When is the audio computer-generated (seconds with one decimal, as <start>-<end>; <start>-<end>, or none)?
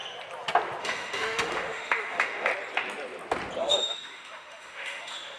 0.8-2.5; 3.6-5.4